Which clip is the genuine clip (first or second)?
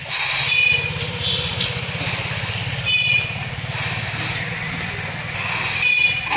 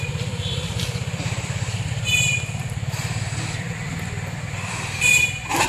first